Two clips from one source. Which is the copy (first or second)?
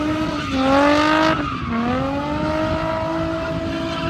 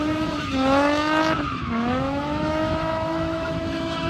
second